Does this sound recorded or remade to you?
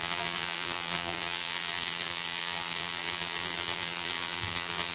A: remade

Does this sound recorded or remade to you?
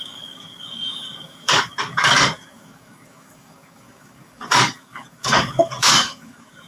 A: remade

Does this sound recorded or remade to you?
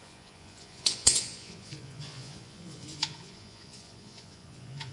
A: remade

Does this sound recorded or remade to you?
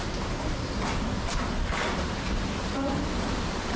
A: recorded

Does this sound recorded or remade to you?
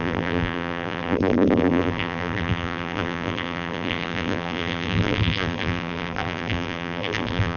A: remade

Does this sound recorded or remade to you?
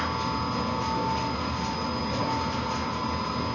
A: recorded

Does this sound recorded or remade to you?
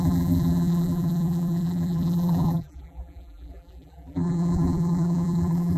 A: remade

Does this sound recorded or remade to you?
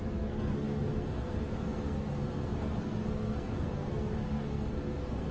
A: remade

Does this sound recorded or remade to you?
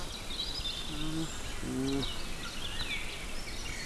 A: recorded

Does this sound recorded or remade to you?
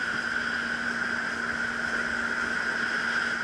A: recorded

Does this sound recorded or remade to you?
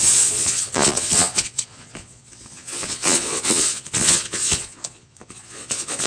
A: remade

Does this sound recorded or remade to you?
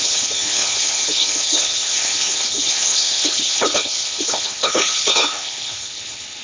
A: remade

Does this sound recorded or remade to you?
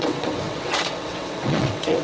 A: remade